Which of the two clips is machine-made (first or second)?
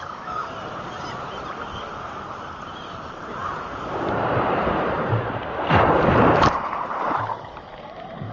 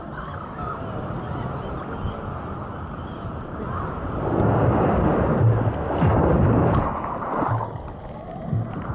first